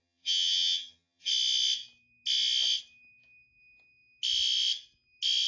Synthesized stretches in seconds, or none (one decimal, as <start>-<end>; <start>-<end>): 0.0-1.3